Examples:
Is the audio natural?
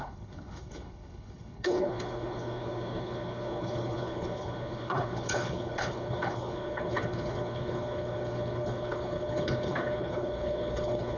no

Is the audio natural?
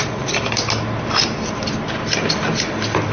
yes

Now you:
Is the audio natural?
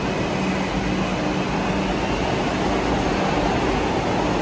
yes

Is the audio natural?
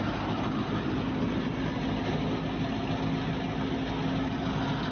yes